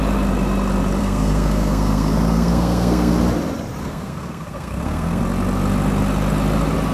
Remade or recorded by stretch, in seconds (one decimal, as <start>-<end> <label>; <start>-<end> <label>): 0.0-1.0 recorded; 1.0-3.1 remade; 3.1-3.8 recorded; 3.8-5.2 remade; 5.2-6.9 recorded